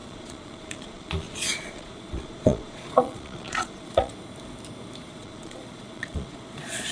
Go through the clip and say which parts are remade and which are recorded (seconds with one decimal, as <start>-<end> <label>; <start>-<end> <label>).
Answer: 0.0-4.1 remade; 4.1-5.1 recorded; 5.1-6.9 remade